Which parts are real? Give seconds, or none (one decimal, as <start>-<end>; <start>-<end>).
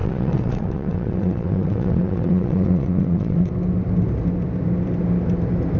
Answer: 3.5-5.8